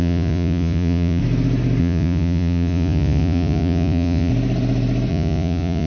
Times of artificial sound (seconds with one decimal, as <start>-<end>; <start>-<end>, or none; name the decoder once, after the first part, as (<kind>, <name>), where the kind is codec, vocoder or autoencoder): 0.0-1.2 (vocoder, Vocos); 1.8-4.3; 5.1-5.9